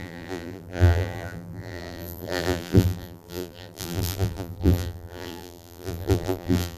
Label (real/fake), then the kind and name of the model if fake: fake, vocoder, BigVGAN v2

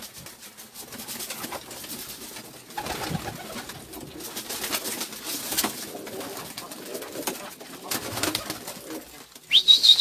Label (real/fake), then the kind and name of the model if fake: real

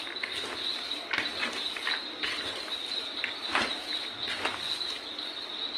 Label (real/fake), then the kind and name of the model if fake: real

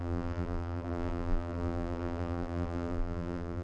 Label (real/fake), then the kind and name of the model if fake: fake, vocoder, BigVGAN v2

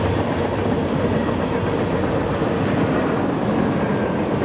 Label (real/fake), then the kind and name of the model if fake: real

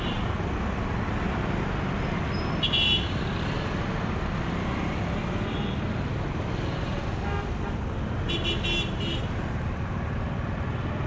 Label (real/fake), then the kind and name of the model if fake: real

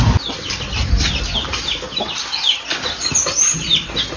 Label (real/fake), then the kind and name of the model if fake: real